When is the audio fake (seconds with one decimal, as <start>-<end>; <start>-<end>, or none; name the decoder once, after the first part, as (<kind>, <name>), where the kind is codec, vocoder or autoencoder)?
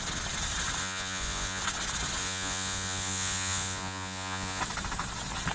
0.8-1.6 (vocoder, Vocos); 2.2-4.6